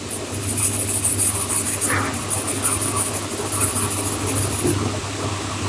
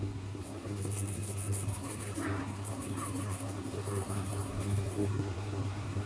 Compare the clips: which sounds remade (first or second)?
second